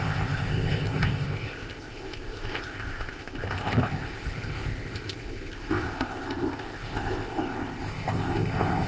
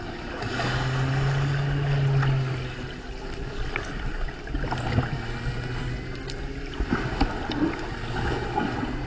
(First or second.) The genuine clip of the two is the second